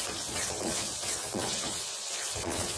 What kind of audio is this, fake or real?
fake